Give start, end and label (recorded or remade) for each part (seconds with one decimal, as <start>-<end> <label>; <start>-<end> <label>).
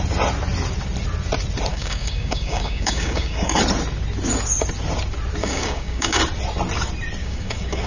0.0-1.7 recorded; 1.7-3.6 remade; 3.6-5.4 recorded; 5.4-6.2 remade; 6.2-7.2 recorded; 7.2-7.9 remade